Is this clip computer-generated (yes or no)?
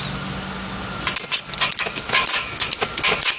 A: no